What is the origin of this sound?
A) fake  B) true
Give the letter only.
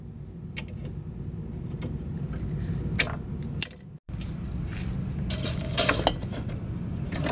B